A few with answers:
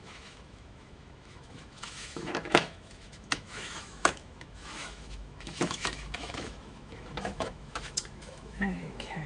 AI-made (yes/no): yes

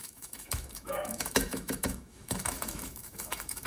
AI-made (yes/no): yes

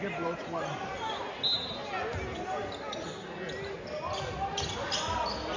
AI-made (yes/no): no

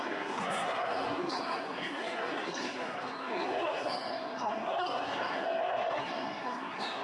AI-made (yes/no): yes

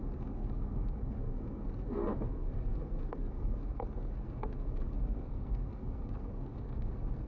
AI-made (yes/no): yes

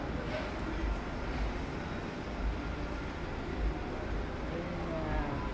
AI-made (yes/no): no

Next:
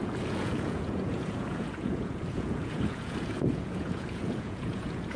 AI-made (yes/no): yes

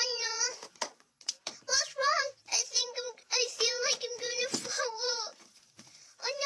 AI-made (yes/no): yes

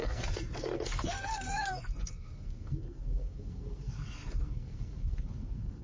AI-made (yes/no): yes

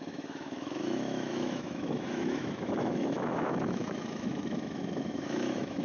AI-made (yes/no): yes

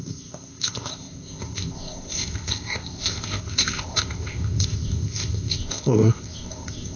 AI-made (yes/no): yes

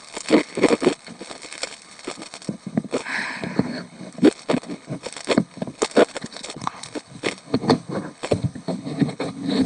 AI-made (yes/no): yes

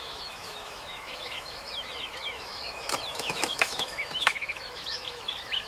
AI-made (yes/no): yes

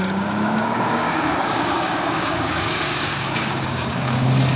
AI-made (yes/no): yes